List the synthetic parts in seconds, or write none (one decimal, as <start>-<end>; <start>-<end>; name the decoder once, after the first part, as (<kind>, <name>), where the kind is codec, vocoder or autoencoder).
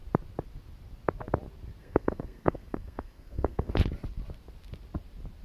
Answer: 1.8-3.7 (codec, SNAC)